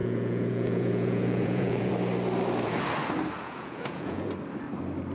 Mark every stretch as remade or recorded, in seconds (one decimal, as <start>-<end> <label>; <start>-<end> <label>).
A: 0.0-1.9 remade; 1.9-3.4 recorded; 3.4-4.3 remade; 4.3-5.1 recorded